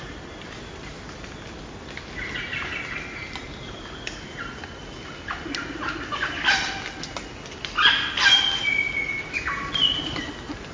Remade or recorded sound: recorded